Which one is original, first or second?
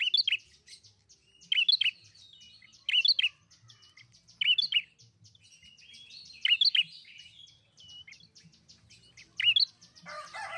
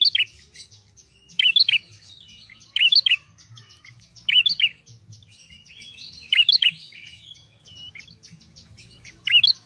first